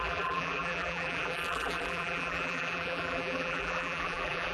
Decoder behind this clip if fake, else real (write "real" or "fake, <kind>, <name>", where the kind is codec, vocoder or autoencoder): fake, vocoder, BigVGAN v2